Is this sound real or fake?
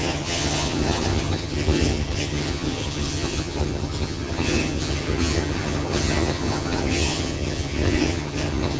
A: fake